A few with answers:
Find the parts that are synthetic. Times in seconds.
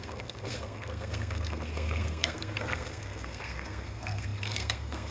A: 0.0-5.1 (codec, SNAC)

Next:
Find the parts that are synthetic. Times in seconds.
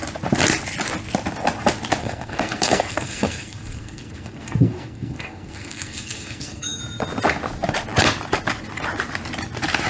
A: 2.0-6.8 (codec, SNAC)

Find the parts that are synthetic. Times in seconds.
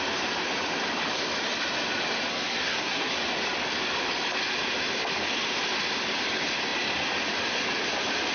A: 2.3-3.1 (codec, SNAC)